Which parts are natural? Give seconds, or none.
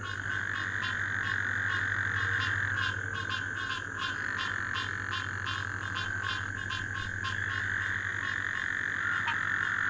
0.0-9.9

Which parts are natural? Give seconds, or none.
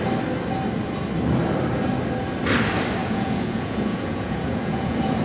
0.0-3.0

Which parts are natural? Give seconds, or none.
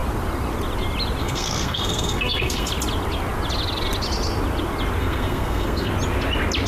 0.0-1.2; 2.7-5.0; 5.9-6.7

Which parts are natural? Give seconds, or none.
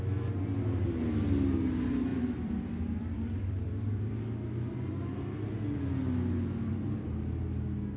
0.0-2.1; 4.1-8.0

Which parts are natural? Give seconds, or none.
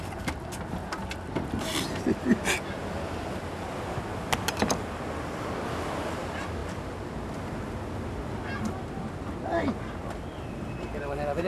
0.0-11.5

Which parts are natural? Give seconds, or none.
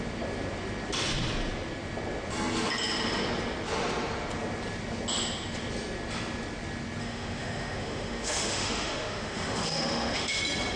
0.0-7.0; 10.4-10.8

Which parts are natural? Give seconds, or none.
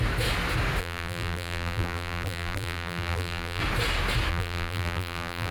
0.0-0.8; 3.6-4.3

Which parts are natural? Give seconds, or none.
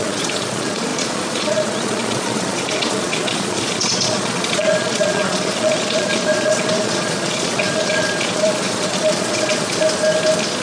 9.8-10.6